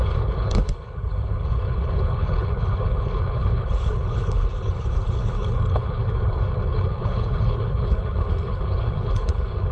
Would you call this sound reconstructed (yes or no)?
yes